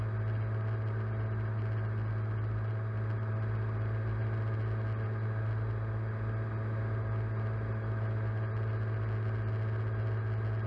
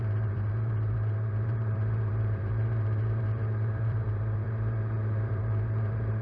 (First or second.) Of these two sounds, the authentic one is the first